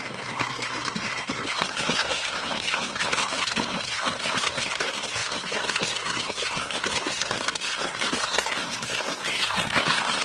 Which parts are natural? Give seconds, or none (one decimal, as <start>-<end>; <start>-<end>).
none